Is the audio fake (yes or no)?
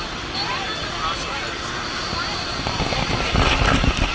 no